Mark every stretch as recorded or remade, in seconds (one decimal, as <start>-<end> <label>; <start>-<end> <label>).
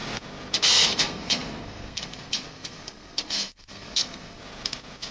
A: 0.0-0.6 recorded; 0.6-4.4 remade; 4.4-5.1 recorded